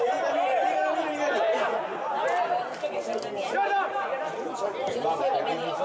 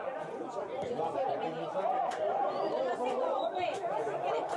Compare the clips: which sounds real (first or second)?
first